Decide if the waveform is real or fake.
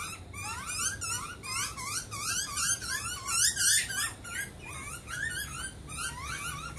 real